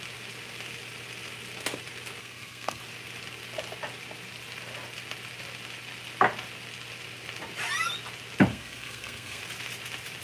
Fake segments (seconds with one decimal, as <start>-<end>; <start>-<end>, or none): 2.2-2.8; 8.5-9.4

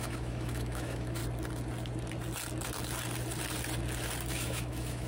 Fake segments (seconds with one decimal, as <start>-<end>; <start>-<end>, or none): 0.0-1.2; 4.3-5.1

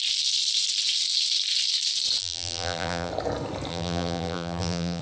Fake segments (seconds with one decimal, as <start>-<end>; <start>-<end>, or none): 2.2-3.1; 3.7-5.0

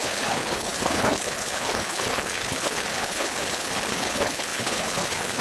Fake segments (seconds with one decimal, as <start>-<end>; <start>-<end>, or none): 0.0-5.4

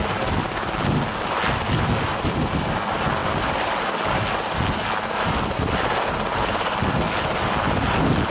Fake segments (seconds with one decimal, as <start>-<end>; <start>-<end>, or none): none

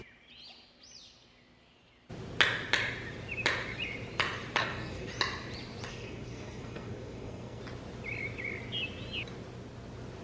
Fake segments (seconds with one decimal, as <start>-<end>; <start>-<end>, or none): 4.6-5.1; 5.9-7.6